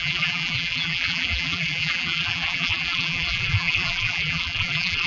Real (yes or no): no